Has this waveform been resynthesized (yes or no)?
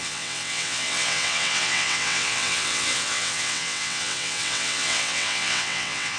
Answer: yes